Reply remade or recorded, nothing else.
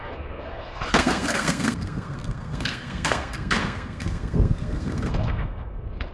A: remade